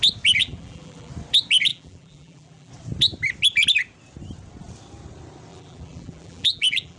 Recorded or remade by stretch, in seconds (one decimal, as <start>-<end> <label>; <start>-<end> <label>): 0.0-0.4 recorded; 0.4-1.1 remade; 1.1-1.7 recorded; 1.7-2.7 remade; 2.7-5.5 recorded; 5.5-7.0 remade